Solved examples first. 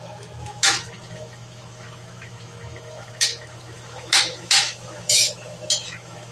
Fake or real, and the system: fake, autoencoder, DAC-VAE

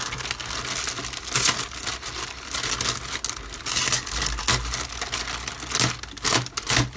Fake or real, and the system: real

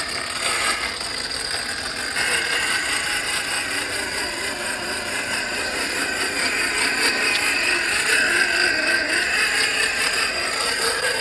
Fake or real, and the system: real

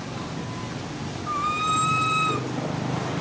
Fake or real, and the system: real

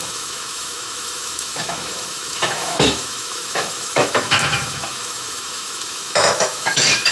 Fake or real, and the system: fake, autoencoder, DAC-VAE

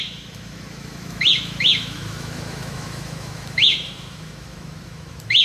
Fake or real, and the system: fake, autoencoder, DAC-VAE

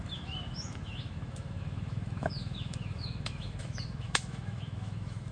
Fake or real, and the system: fake, autoencoder, DAC-VAE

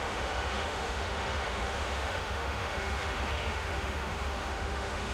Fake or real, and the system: fake, autoencoder, DAC-VAE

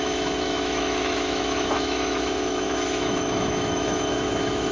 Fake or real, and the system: fake, autoencoder, DAC-VAE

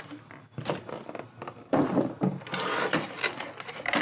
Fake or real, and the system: real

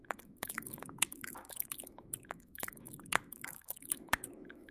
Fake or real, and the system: fake, autoencoder, DAC-VAE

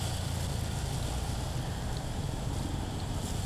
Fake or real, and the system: real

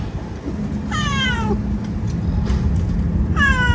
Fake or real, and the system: real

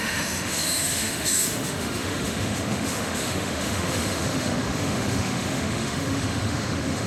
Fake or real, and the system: fake, autoencoder, DAC-VAE